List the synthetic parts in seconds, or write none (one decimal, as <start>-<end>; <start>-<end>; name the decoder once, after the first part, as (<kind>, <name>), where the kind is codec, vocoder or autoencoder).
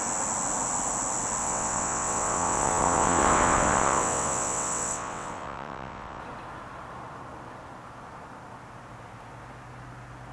1.4-6.2 (vocoder, WaveNeXt)